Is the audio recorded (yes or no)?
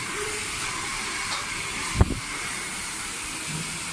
no